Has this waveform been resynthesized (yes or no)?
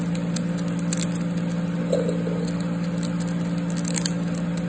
no